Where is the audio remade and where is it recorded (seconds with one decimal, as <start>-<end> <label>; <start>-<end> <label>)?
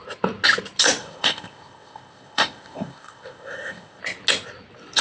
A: 0.0-1.0 recorded; 1.0-4.0 remade; 4.0-5.0 recorded